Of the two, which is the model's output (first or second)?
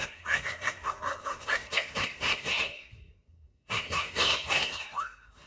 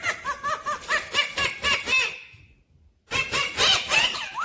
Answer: first